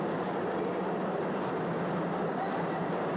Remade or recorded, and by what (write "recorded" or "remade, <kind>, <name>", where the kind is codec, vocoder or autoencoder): recorded